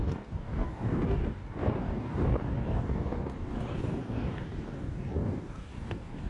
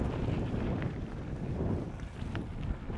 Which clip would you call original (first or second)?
second